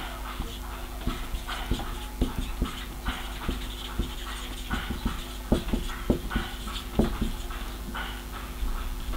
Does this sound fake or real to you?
real